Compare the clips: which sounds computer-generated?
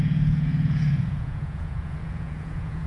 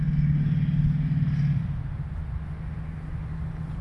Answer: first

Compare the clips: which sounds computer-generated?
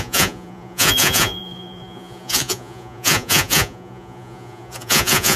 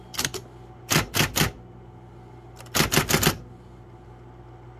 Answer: first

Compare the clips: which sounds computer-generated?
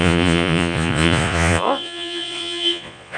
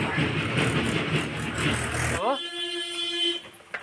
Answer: first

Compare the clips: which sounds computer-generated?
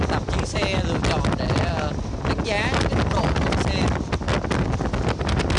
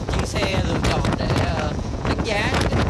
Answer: second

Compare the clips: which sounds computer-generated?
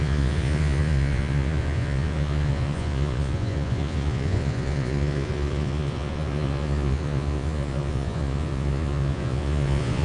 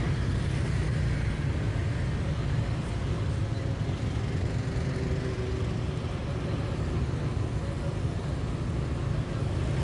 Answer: first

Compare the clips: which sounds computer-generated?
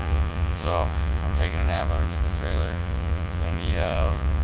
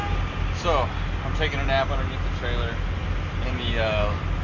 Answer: first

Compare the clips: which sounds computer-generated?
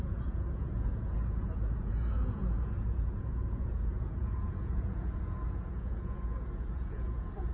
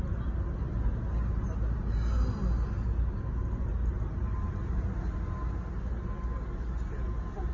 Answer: first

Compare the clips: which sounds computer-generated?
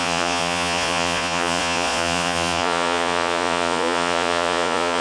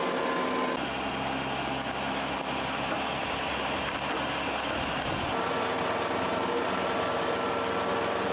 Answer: first